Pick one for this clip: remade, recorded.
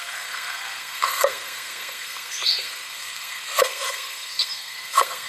remade